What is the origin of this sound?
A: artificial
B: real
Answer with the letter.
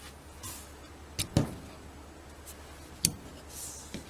B